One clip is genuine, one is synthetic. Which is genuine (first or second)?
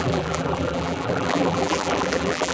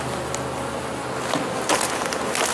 second